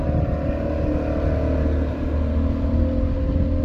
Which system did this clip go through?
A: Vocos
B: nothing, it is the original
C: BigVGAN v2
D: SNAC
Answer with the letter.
B